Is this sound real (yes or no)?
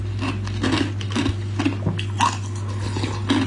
yes